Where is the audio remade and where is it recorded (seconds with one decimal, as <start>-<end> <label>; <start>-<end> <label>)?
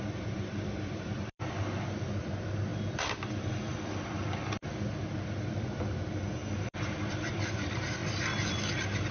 0.0-8.0 remade; 8.0-8.5 recorded; 8.5-9.1 remade